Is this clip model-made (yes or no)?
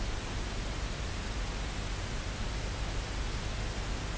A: no